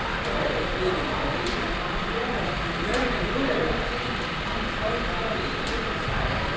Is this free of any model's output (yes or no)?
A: yes